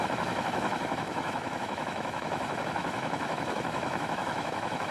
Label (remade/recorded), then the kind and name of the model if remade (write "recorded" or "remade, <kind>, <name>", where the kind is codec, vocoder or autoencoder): remade, autoencoder, DAC-VAE